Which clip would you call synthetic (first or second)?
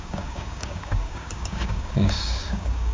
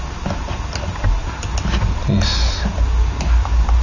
first